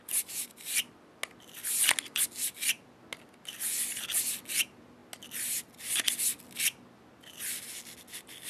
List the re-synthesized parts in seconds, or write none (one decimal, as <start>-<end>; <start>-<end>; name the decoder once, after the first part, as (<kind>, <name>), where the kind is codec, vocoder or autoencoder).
none